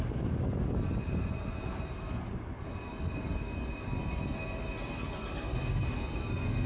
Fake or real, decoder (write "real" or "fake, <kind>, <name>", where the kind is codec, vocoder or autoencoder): real